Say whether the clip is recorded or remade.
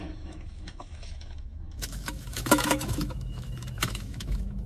remade